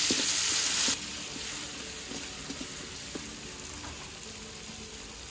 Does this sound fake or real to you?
real